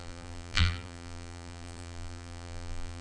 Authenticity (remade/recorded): remade